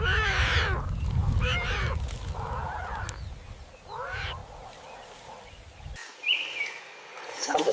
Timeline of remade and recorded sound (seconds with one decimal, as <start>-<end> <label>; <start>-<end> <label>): 0.0-4.4 recorded; 4.4-5.4 remade; 5.4-6.0 recorded; 6.0-6.8 remade; 6.8-7.7 recorded

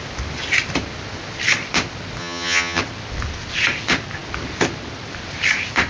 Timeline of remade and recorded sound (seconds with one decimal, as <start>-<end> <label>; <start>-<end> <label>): 0.0-2.2 recorded; 2.2-2.8 remade; 2.8-5.9 recorded

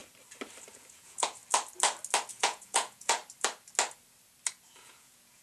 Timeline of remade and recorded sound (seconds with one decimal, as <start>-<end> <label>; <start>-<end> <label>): 0.0-0.7 recorded; 0.7-1.4 remade; 1.4-2.3 recorded; 2.3-3.2 remade; 3.2-4.8 recorded; 4.8-5.4 remade

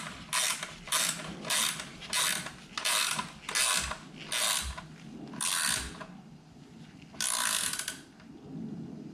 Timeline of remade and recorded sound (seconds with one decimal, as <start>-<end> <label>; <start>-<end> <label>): 0.0-9.1 recorded

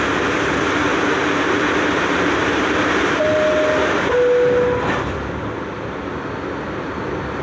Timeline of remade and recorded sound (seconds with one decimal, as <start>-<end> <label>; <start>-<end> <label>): 0.0-0.9 recorded; 0.9-1.7 remade; 1.7-2.5 recorded; 2.5-3.3 remade; 3.3-7.4 recorded

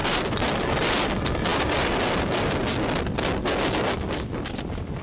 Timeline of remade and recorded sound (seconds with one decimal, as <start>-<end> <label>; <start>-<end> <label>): 0.0-5.0 recorded

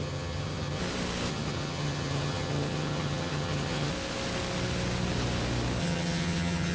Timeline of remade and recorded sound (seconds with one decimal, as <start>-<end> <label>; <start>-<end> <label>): 0.0-0.8 remade; 0.8-1.3 recorded; 1.3-3.9 remade; 3.9-5.8 recorded; 5.8-6.7 remade